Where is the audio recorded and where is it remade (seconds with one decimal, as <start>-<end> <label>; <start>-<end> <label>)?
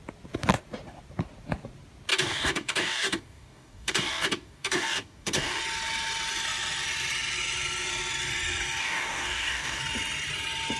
0.0-2.1 recorded; 2.1-5.6 remade; 5.6-8.8 recorded; 8.8-9.8 remade; 9.8-10.8 recorded